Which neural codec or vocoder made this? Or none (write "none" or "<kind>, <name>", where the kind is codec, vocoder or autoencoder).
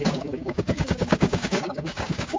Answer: codec, DAC